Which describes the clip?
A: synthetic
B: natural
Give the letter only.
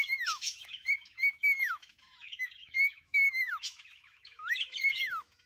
A